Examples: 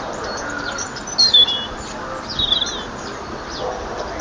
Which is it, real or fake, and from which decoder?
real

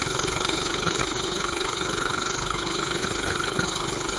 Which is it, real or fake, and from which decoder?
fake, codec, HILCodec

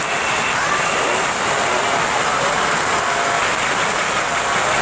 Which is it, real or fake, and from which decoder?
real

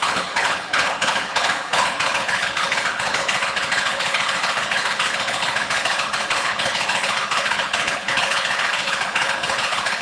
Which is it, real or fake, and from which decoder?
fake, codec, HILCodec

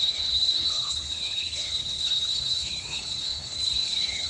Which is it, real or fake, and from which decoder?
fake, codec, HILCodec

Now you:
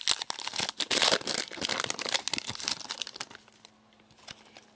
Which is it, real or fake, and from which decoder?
real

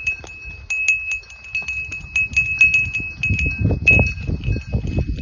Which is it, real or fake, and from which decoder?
real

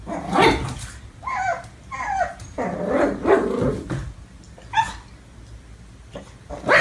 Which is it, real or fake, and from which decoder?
real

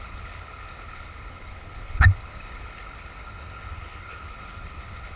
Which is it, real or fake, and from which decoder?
fake, codec, HILCodec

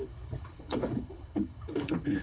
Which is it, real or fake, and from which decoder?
fake, codec, HILCodec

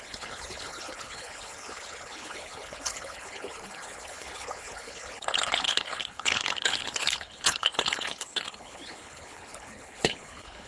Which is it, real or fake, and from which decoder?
fake, codec, HILCodec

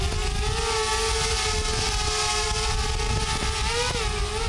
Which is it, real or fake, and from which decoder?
real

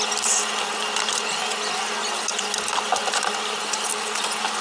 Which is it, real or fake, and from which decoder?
real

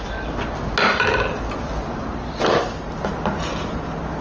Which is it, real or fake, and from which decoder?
real